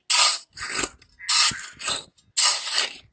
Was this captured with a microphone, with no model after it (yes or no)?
yes